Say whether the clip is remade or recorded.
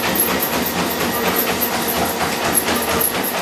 recorded